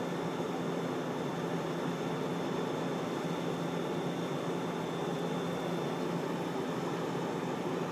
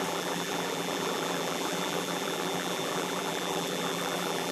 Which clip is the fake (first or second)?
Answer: second